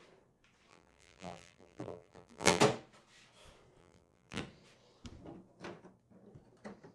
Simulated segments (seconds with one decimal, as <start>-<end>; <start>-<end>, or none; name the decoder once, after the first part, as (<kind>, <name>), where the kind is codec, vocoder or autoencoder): 0.7-2.6 (vocoder, BigVGAN v2); 3.8-4.4